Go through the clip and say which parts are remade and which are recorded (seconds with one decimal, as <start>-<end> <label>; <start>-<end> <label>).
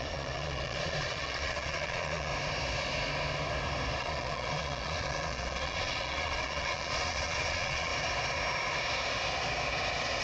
0.0-2.3 remade; 2.3-4.0 recorded; 4.0-7.9 remade; 7.9-10.2 recorded